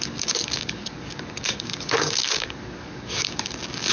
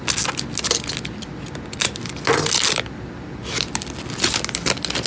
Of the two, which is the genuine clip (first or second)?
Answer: second